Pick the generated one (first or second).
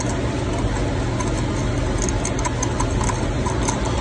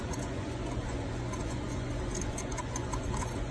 second